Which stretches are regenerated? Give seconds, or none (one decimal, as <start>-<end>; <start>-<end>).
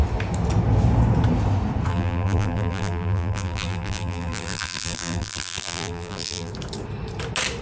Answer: 1.9-6.5